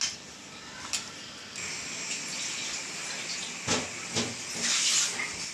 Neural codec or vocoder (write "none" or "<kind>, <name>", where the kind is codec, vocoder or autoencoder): none